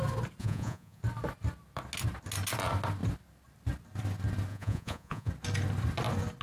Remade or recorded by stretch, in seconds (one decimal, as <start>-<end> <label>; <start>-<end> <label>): 0.0-0.4 recorded; 0.4-1.0 remade; 1.0-4.5 recorded; 4.5-5.3 remade; 5.3-6.4 recorded